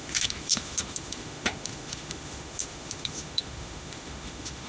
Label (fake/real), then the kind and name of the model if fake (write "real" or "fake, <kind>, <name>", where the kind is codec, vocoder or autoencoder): fake, autoencoder, DAC-VAE